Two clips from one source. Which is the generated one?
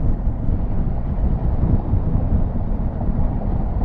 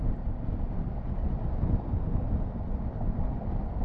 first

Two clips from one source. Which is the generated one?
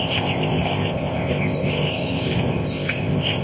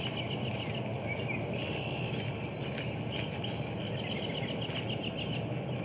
first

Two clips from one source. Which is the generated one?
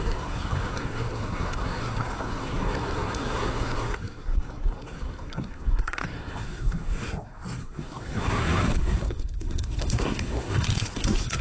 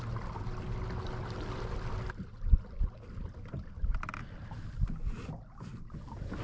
first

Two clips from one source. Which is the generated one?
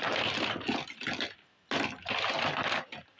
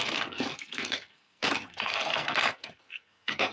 second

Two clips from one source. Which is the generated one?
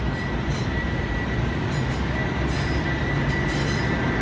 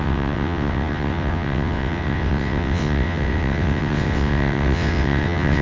second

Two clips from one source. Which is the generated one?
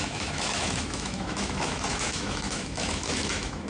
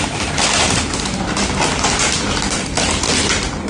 first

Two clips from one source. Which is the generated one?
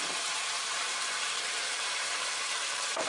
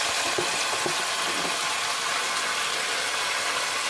first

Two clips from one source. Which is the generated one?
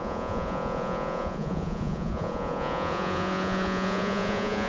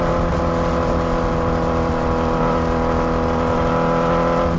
first